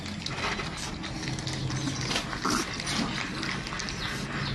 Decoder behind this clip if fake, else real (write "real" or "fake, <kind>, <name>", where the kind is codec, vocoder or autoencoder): real